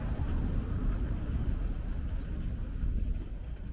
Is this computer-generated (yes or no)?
no